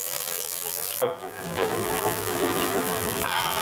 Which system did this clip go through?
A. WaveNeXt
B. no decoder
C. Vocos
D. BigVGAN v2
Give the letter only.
D